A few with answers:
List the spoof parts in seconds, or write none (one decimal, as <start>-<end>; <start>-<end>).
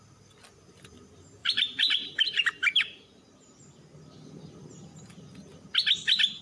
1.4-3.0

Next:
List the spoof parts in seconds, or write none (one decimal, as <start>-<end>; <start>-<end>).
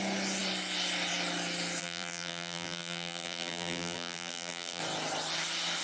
1.8-4.8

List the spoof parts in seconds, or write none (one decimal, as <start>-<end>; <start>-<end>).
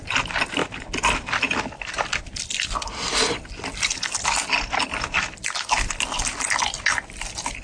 0.6-1.5; 2.2-5.5